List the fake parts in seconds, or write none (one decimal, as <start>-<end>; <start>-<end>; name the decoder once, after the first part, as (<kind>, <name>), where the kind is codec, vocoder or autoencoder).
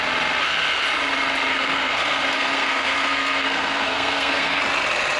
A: 1.5-4.6 (codec, SNAC)